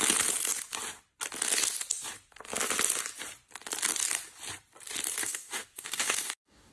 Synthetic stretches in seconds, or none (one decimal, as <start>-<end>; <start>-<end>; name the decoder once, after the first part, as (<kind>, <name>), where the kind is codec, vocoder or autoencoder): 5.2-6.7 (codec, DAC)